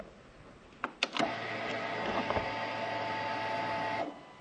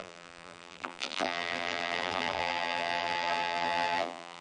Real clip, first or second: first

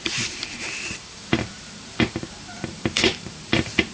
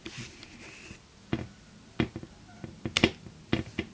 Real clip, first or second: second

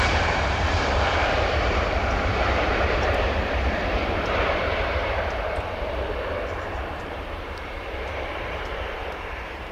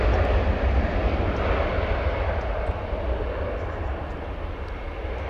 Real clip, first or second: second